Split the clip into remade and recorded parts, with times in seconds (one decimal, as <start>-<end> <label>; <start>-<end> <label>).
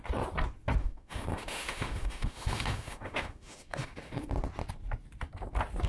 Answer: 0.0-0.8 recorded; 0.8-4.3 remade; 4.3-5.9 recorded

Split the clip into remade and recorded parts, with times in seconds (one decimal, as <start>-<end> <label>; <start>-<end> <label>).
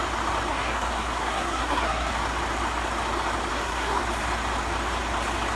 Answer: 0.0-0.5 recorded; 0.5-2.1 remade; 2.1-3.5 recorded; 3.5-4.0 remade; 4.0-5.6 recorded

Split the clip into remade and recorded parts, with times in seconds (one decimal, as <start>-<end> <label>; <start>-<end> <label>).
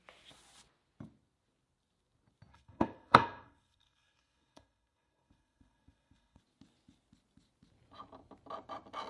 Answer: 0.0-2.5 recorded; 2.5-6.4 remade; 6.4-9.1 recorded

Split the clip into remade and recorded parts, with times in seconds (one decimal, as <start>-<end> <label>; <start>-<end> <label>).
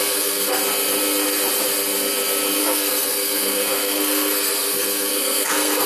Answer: 0.0-0.6 remade; 0.6-2.6 recorded; 2.6-5.9 remade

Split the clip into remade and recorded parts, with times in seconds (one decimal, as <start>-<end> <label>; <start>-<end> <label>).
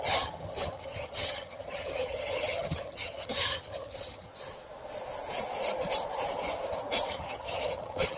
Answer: 0.0-4.3 remade; 4.3-7.1 recorded; 7.1-8.2 remade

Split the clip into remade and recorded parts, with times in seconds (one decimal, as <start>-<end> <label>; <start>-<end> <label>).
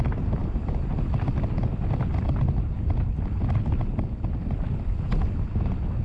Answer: 0.0-6.0 recorded